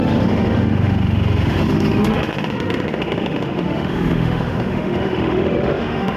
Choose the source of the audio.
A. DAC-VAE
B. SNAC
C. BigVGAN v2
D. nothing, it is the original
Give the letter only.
A